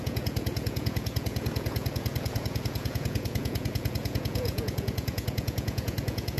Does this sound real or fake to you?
fake